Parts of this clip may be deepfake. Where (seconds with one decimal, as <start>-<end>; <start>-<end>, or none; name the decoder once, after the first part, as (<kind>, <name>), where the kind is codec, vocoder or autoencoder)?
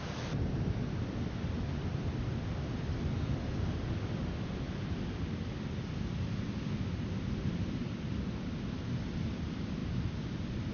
none